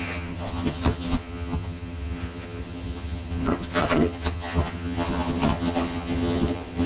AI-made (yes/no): yes